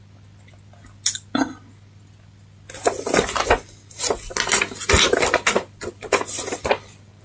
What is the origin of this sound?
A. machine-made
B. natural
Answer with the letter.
B